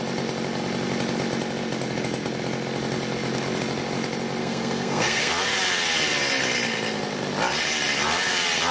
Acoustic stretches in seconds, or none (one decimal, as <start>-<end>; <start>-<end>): 0.0-4.4; 5.3-8.7